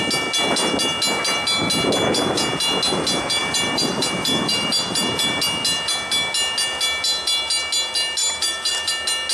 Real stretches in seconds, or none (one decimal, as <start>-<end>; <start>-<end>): 0.0-3.4; 5.4-8.2; 8.9-9.3

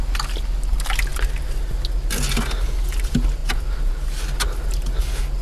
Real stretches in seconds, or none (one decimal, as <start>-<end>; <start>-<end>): 0.0-3.4; 4.2-5.4

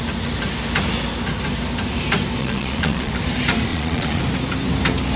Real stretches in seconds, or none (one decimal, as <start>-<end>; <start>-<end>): 0.0-2.4; 3.1-3.7; 4.2-5.2

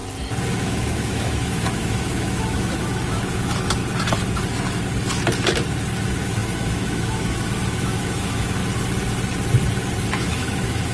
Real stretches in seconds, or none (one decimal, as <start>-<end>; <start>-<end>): 0.0-0.6; 3.8-6.0; 8.6-10.2

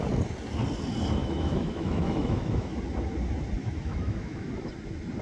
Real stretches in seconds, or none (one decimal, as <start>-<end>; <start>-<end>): 0.0-1.2; 2.8-3.6; 4.7-5.2

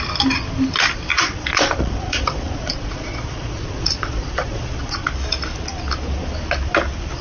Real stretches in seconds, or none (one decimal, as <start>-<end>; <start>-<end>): 0.0-1.1; 5.1-7.2